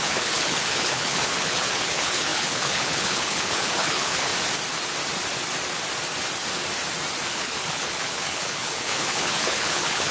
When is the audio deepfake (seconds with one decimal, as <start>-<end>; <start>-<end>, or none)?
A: 0.0-4.3; 7.3-10.1